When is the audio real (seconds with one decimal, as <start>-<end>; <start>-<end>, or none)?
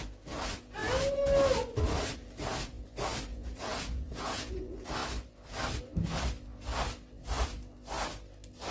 0.0-3.3; 4.5-8.7